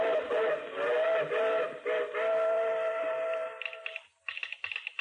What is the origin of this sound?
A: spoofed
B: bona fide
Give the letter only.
B